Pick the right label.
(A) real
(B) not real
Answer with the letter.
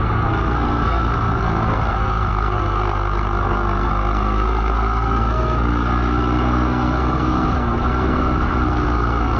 B